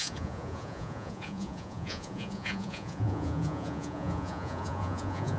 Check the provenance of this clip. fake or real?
fake